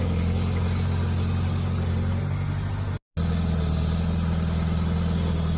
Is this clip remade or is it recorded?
recorded